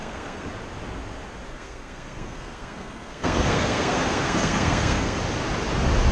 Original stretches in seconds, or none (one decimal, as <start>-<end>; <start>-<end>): 0.5-1.5; 5.2-6.1